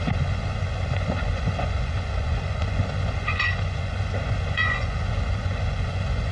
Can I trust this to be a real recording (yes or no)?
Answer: no